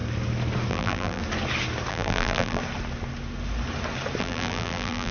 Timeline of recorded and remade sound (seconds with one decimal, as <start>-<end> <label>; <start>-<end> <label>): 0.0-0.7 recorded; 0.7-1.2 remade; 1.2-1.9 recorded; 1.9-2.6 remade; 2.6-4.2 recorded; 4.2-5.1 remade